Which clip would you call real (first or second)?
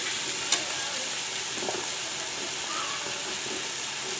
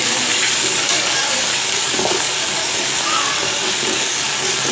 first